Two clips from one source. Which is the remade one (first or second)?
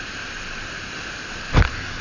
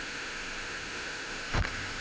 second